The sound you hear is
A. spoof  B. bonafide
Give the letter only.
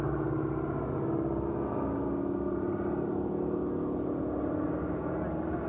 B